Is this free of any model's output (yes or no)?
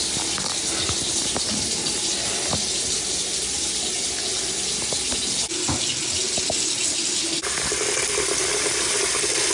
yes